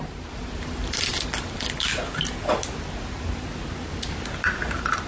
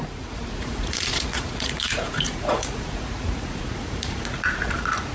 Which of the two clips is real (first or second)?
first